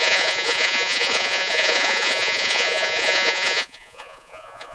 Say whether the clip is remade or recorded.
remade